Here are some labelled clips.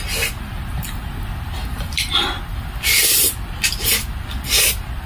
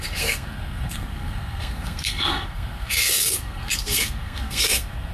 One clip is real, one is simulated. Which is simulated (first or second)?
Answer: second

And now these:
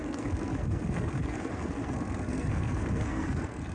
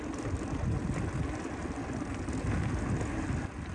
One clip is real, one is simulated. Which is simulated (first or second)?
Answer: first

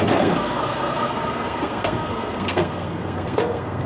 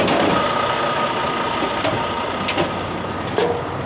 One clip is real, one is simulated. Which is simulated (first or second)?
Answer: first